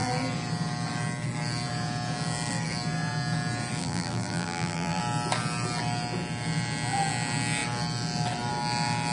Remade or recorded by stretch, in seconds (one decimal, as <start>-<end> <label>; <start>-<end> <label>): 0.0-3.8 recorded; 3.8-5.0 remade; 5.0-9.1 recorded